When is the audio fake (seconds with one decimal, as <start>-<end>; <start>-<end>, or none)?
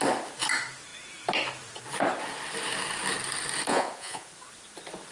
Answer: 3.7-4.3